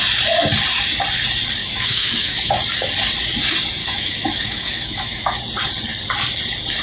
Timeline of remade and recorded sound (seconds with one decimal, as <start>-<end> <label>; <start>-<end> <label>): 0.0-1.6 recorded; 1.6-2.5 remade; 2.5-3.8 recorded; 3.8-5.4 remade; 5.4-6.8 recorded